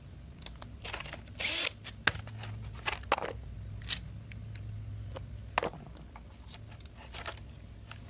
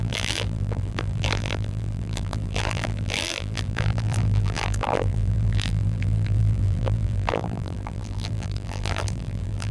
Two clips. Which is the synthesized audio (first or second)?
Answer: second